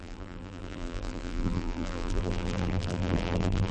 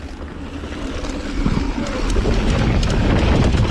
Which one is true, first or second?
second